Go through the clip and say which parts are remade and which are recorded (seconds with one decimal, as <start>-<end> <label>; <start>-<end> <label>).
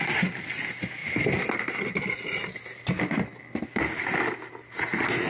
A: 0.0-5.3 recorded